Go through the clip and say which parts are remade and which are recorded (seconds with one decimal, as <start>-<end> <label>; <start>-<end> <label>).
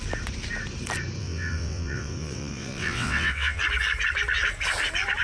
0.0-1.2 recorded; 1.2-3.6 remade; 3.6-5.2 recorded